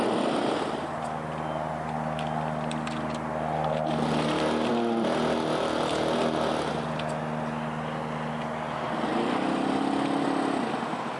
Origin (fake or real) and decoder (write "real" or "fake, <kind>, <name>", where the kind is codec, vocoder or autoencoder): real